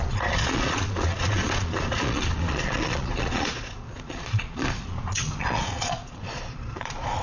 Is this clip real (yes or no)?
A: no